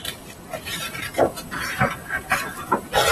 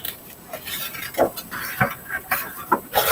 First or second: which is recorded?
second